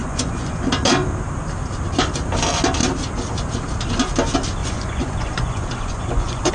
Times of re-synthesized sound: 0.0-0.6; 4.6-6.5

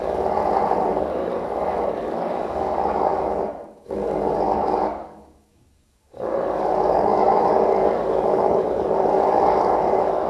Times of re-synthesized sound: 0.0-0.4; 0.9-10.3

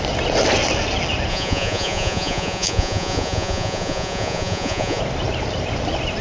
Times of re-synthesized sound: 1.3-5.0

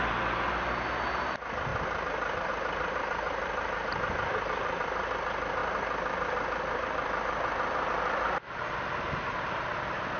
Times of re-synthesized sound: none

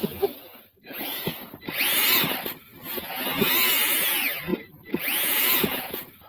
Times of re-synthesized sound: 0.0-2.0; 3.4-6.3

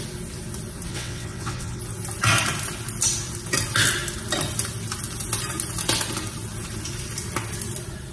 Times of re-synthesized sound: 0.9-1.8

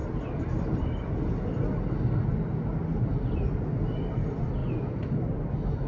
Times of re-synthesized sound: none